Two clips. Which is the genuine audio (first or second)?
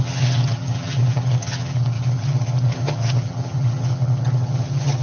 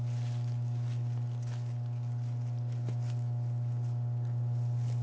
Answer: second